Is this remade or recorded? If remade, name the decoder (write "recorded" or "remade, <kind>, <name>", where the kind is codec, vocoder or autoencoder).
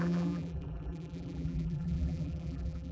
remade, vocoder, BigVGAN v2